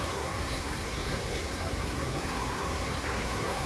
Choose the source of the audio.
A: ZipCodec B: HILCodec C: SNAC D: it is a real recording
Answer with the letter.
C